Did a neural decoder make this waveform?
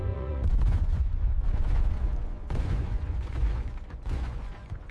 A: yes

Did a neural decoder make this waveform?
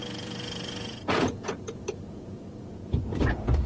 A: yes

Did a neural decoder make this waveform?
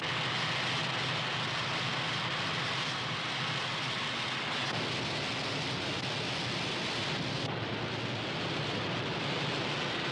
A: no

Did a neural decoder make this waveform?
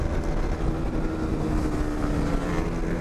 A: no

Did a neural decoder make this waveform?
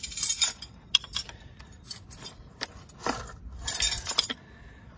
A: no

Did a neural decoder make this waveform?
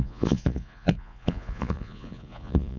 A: yes